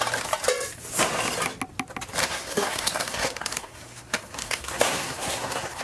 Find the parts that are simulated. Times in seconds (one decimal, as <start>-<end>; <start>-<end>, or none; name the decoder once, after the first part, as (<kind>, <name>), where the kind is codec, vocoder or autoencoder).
2.2-5.8 (codec, SNAC)